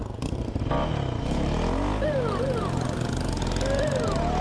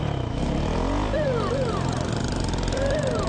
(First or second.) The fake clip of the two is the second